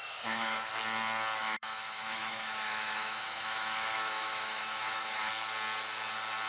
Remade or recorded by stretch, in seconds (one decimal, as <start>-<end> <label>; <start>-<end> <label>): 0.0-0.7 remade; 0.7-1.4 recorded; 1.4-5.3 remade; 5.3-6.5 recorded